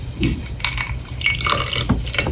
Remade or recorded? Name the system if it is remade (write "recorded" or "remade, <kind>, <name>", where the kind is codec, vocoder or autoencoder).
recorded